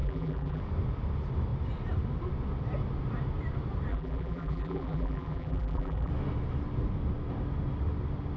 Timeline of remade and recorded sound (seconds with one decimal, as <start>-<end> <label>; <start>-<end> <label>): 0.0-0.6 remade; 0.6-3.9 recorded; 3.9-6.1 remade; 6.1-8.4 recorded